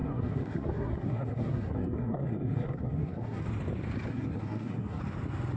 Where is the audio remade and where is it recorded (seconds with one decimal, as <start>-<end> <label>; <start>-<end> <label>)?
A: 0.0-3.4 remade; 3.4-4.1 recorded; 4.1-5.0 remade; 5.0-5.6 recorded